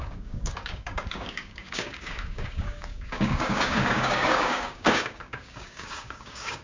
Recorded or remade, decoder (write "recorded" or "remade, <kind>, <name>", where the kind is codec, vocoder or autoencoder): remade, codec, DAC